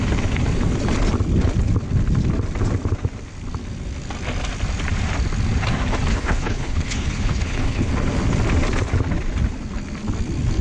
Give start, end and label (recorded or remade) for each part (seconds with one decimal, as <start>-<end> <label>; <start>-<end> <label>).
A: 0.0-6.1 recorded; 6.1-7.9 remade; 7.9-10.6 recorded